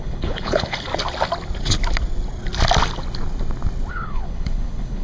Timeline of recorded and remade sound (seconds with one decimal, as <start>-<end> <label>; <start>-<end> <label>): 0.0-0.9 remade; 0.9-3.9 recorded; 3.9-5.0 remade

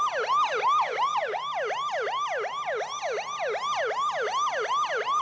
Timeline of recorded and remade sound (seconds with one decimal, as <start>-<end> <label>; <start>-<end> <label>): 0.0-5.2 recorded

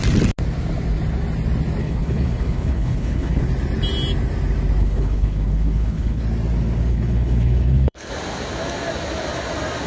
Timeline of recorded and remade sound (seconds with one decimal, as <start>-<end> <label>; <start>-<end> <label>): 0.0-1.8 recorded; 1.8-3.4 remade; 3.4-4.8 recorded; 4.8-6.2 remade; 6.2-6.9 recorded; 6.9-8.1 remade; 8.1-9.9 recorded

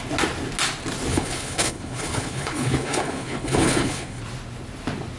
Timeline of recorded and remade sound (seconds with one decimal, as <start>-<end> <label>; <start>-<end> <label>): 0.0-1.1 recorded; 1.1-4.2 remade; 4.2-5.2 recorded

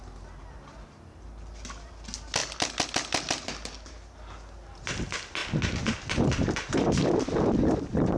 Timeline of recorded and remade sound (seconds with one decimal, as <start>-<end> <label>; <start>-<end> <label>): 0.0-8.2 recorded

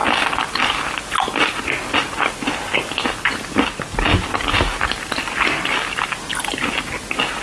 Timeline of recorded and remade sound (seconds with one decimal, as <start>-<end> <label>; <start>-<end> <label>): 0.0-7.4 recorded

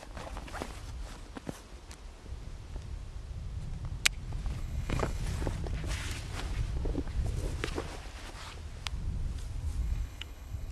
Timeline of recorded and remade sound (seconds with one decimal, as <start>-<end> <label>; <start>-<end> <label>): 0.0-4.6 recorded; 4.6-5.2 remade; 5.2-9.8 recorded; 9.8-10.7 remade